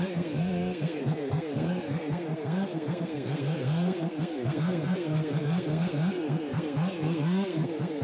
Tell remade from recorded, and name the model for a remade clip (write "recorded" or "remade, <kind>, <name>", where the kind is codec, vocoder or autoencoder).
remade, codec, SNAC